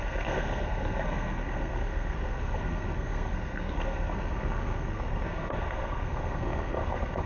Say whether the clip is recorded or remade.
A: remade